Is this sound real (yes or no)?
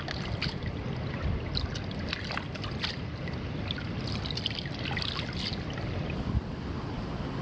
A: yes